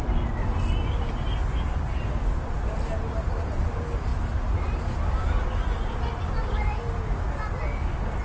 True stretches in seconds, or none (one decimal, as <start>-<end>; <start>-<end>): 0.0-8.2